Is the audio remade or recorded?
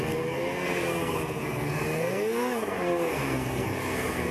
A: remade